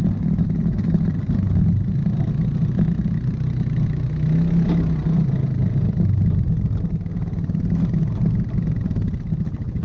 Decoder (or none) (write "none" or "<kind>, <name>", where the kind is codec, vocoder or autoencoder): none